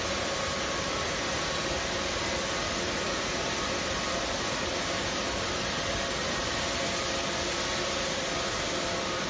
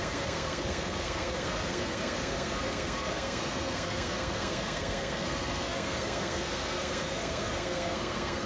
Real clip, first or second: first